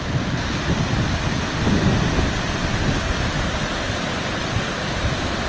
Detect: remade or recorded recorded